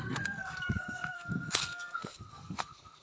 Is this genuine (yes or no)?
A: no